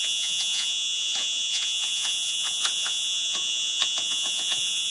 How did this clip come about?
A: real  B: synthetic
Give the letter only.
B